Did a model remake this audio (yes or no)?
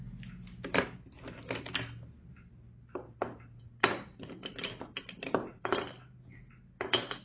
no